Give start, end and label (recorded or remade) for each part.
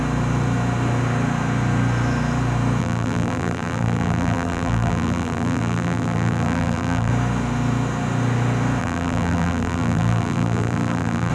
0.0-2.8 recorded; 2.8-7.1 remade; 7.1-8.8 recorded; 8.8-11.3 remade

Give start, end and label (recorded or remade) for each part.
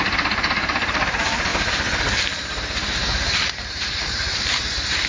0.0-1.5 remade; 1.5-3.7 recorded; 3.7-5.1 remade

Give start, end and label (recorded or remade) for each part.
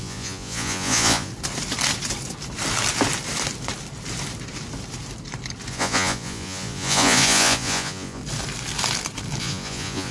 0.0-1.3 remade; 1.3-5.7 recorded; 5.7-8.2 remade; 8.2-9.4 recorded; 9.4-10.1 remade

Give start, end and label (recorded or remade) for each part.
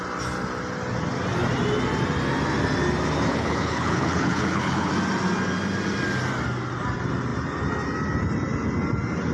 0.0-3.3 recorded; 3.3-4.9 remade; 4.9-9.3 recorded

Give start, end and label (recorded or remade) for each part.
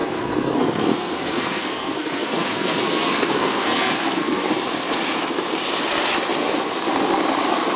0.0-4.5 remade; 4.5-7.8 recorded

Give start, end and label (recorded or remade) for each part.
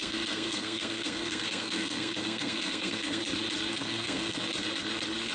0.0-3.2 remade; 3.2-3.7 recorded; 3.7-4.4 remade; 4.4-5.3 recorded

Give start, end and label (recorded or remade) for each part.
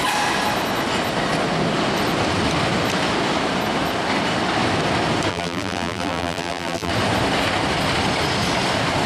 0.0-5.3 recorded; 5.3-6.9 remade; 6.9-9.1 recorded